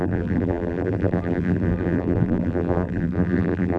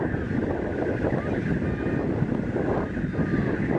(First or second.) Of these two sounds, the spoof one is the first